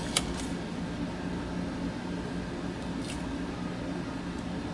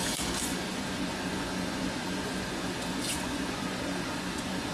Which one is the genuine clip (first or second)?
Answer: first